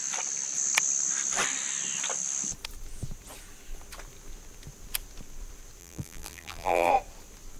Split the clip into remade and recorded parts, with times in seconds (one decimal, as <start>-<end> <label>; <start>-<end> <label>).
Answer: 0.0-5.8 recorded; 5.8-6.9 remade; 6.9-7.6 recorded